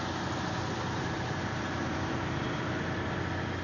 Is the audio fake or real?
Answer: real